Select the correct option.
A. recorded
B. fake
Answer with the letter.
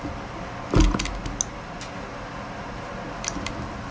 A